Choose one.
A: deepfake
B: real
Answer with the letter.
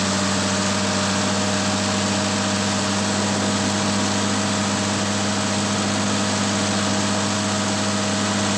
B